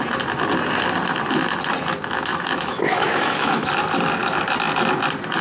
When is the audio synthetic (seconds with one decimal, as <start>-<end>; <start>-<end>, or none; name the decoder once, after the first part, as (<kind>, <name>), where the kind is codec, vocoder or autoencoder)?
2.3-3.7 (autoencoder, DAC-VAE)